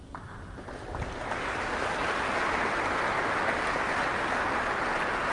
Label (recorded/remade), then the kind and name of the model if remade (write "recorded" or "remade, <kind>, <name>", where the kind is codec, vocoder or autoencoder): recorded